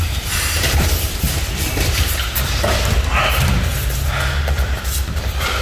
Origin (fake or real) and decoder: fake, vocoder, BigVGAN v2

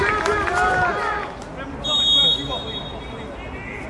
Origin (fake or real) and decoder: real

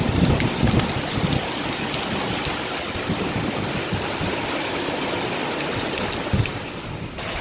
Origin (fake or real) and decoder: real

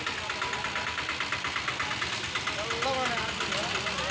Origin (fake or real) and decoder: real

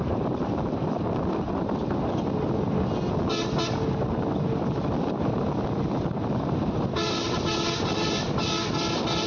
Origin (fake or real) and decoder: real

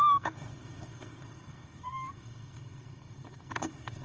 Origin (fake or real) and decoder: fake, codec, SNAC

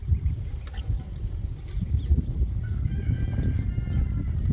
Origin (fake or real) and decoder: real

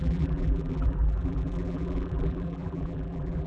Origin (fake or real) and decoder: fake, vocoder, BigVGAN v2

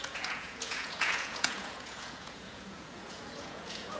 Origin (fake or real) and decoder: fake, vocoder, Vocos